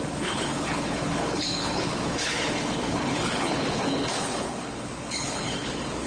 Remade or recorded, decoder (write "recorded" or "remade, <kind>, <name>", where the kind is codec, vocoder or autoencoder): remade, codec, HILCodec